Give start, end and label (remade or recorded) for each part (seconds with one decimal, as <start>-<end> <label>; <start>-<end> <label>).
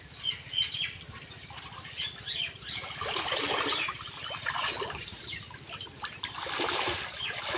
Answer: 0.0-3.7 recorded; 3.7-5.2 remade; 5.2-7.6 recorded